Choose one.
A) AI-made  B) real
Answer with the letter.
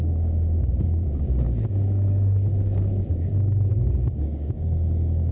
A